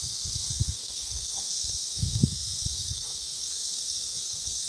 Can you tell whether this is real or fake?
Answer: fake